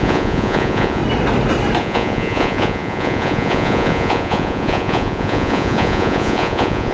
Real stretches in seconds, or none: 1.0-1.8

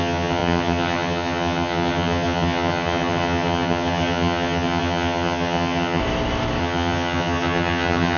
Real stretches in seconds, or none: 6.0-6.6

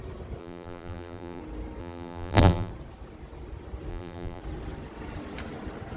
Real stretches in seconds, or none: 0.0-0.4; 1.4-1.8; 2.7-3.9; 4.4-6.0